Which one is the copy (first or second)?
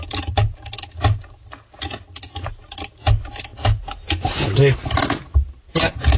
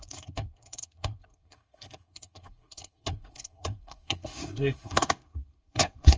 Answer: second